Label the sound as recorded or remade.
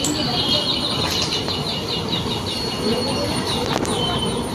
recorded